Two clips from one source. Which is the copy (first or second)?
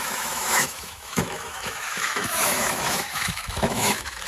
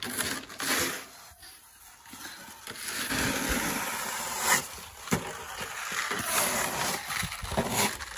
first